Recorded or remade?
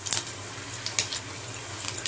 recorded